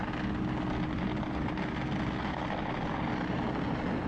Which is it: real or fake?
real